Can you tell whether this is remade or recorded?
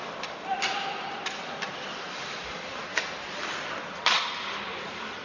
recorded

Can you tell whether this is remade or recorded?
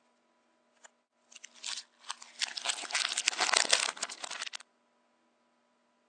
recorded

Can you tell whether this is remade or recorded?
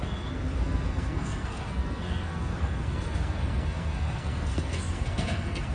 remade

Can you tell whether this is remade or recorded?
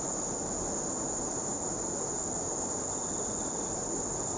recorded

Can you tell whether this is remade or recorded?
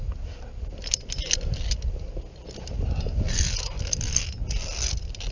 recorded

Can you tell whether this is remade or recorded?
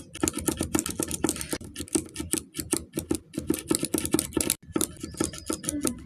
recorded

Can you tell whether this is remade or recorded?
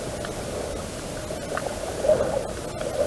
recorded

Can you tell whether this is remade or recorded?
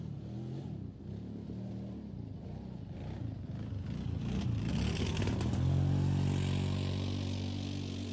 recorded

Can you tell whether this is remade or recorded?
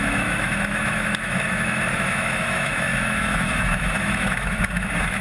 remade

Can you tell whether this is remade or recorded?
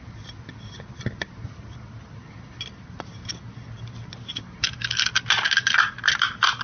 recorded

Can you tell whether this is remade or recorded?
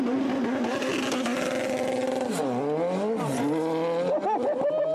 recorded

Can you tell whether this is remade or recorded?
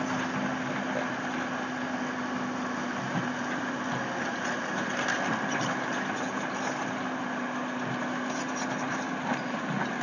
recorded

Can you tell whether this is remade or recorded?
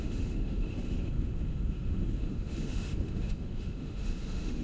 remade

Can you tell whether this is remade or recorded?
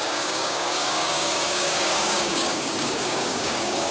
remade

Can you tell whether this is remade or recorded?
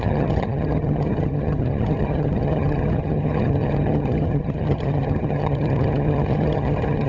remade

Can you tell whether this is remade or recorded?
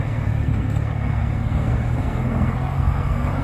remade